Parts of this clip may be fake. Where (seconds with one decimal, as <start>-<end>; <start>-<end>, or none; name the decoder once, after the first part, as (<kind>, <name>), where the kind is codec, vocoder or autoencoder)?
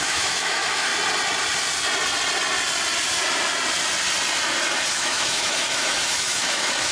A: 0.0-0.9 (autoencoder, DAC-VAE); 4.9-6.9